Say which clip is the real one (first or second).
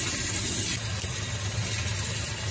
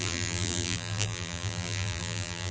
first